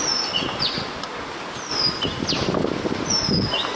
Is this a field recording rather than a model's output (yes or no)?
yes